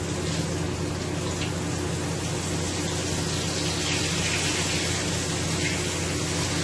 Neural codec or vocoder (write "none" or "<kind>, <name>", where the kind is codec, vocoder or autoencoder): none